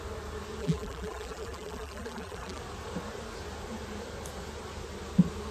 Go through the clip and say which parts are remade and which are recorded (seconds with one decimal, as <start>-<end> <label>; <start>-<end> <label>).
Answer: 0.0-0.6 recorded; 0.6-2.6 remade; 2.6-5.5 recorded